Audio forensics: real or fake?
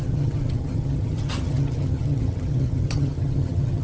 fake